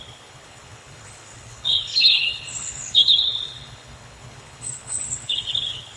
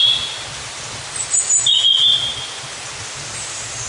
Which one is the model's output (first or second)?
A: first